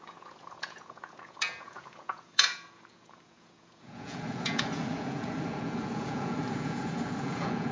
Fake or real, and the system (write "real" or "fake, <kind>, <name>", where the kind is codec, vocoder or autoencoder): fake, vocoder, Vocos